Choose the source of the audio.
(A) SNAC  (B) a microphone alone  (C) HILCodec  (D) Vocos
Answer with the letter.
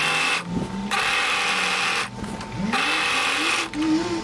B